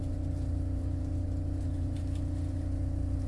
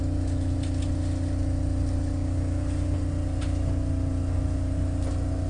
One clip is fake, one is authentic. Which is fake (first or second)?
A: first